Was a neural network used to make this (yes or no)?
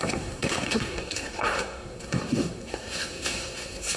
yes